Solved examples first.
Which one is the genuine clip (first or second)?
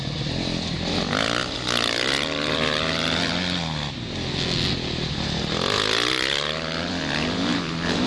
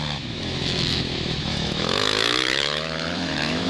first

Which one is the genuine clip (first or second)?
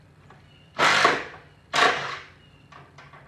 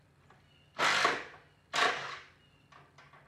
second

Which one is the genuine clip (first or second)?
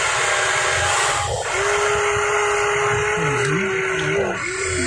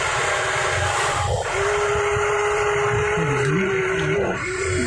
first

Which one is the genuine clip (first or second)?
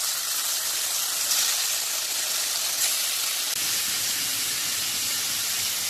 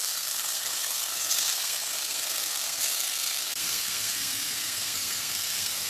first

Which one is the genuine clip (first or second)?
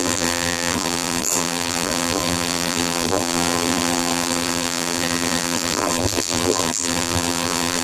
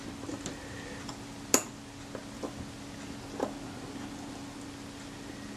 second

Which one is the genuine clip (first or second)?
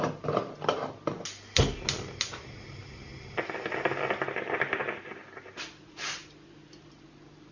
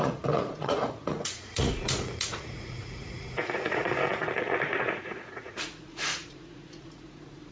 first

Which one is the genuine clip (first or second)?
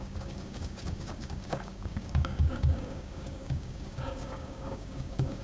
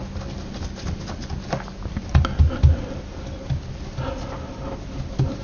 second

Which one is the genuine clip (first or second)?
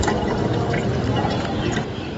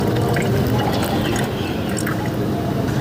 second